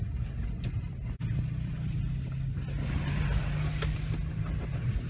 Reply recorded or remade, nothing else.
recorded